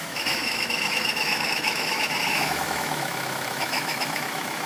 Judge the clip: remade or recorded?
remade